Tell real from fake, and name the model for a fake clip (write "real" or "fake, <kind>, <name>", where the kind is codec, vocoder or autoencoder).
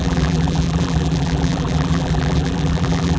fake, vocoder, BigVGAN v2